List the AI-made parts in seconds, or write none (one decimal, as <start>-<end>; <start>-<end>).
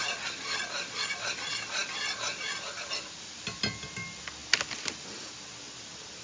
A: none